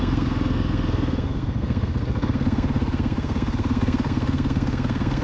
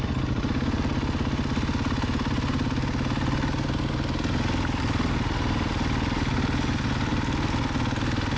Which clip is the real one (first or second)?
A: second